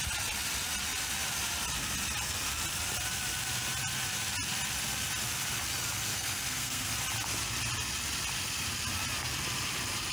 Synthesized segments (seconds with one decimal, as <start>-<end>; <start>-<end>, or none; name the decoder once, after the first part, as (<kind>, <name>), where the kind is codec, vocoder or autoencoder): 6.1-6.9 (codec, SNAC)